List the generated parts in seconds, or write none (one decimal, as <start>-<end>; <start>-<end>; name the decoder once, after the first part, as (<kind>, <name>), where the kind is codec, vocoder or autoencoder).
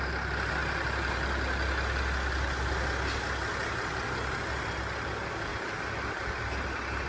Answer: none